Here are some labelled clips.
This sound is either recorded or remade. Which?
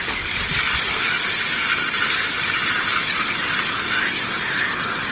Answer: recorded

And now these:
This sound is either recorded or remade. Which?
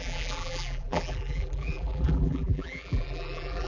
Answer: remade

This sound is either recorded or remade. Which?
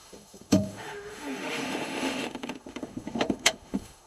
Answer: remade